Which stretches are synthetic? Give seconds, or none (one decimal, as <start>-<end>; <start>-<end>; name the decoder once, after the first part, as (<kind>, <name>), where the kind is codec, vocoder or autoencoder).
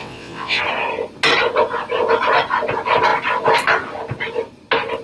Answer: 0.0-0.6 (vocoder, WaveNeXt)